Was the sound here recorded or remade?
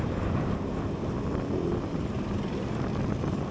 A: recorded